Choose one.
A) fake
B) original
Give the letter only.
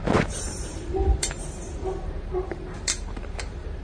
A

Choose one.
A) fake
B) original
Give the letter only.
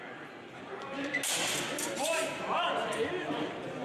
B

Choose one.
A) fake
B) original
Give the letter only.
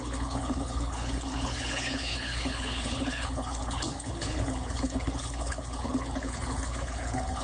A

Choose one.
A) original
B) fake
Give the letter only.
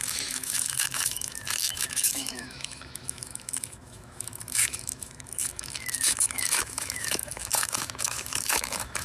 B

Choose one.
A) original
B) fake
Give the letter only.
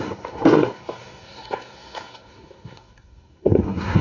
B